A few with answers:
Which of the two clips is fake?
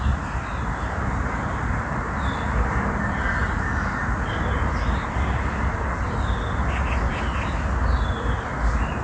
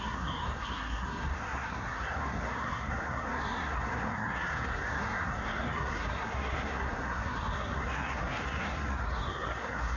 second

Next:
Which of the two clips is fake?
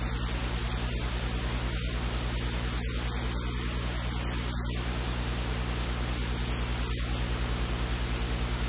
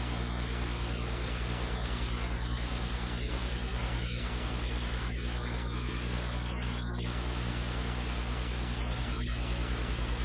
second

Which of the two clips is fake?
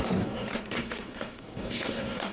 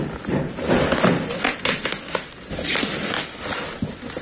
first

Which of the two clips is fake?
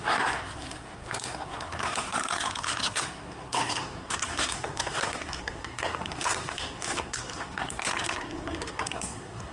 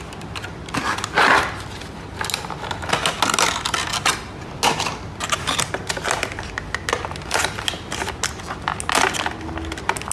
first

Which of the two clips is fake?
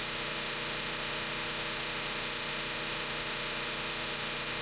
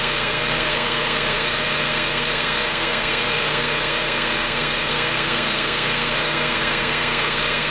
second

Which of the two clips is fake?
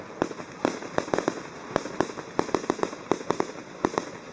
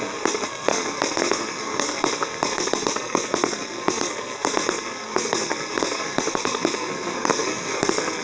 second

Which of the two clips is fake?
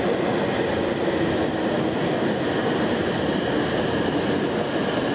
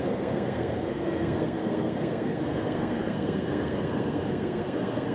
second